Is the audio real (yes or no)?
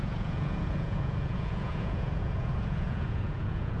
no